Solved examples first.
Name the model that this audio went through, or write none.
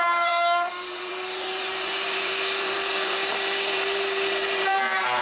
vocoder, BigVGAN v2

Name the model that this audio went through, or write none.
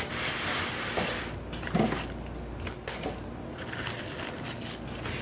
none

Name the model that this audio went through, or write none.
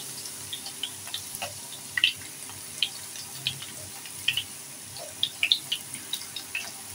none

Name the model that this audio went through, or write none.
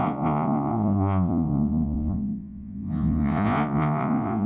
vocoder, Vocos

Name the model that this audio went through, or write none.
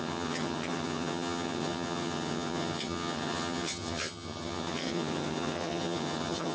vocoder, HiFi-GAN